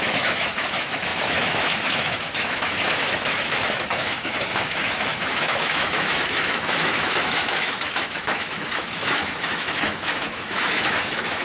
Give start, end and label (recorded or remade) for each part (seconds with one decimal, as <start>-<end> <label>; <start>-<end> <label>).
0.0-11.4 remade